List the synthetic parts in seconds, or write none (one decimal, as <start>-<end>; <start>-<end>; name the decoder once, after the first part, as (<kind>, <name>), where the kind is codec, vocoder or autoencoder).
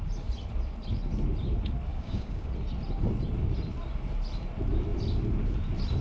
1.9-2.5 (codec, DAC)